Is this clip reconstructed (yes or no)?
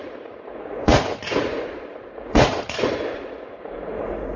yes